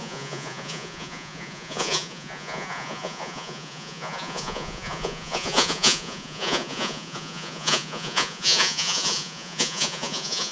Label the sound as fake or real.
fake